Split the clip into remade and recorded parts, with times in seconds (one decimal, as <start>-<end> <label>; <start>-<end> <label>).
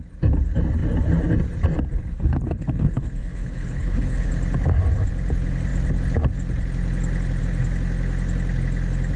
0.0-2.1 recorded; 2.1-4.3 remade; 4.3-9.2 recorded